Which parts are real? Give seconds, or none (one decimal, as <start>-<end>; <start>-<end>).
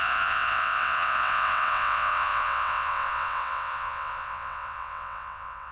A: none